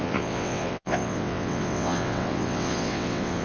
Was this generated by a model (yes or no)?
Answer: yes